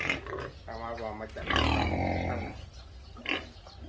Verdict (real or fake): real